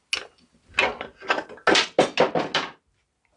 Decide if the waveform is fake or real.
real